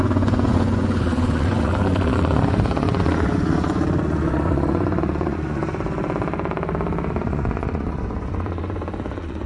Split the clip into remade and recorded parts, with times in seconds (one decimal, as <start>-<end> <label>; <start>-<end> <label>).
0.0-5.6 remade; 5.6-7.2 recorded; 7.2-9.5 remade